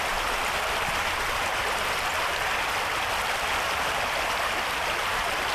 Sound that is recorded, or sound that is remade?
recorded